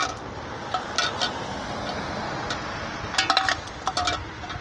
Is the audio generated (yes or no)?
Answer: no